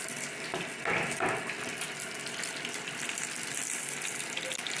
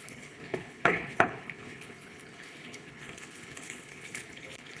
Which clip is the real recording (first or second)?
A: first